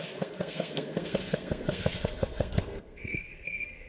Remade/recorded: remade